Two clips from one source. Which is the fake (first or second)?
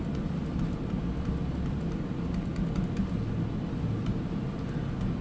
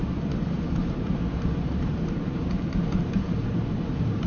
second